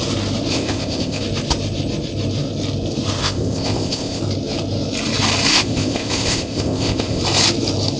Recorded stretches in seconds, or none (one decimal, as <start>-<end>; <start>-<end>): 0.0-0.5; 1.2-3.2; 4.2-5.5; 7.2-8.0